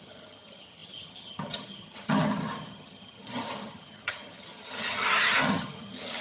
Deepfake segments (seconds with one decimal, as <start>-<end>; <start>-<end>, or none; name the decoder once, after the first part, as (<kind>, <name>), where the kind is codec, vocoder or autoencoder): 0.0-6.2 (vocoder, HiFi-GAN)